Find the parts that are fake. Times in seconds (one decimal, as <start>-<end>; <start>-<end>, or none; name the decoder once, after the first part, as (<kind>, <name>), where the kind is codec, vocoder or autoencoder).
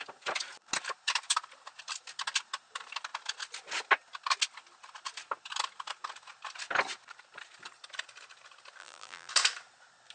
8.8-9.3 (vocoder, BigVGAN v2)